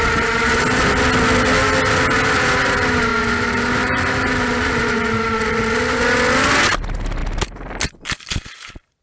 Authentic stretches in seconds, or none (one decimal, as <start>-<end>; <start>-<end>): 0.0-3.1; 6.0-9.0